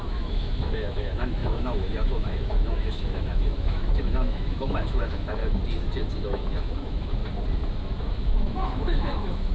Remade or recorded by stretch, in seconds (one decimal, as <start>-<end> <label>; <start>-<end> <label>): 0.0-5.4 remade; 5.4-6.1 recorded; 6.1-7.2 remade; 7.2-8.0 recorded; 8.0-9.5 remade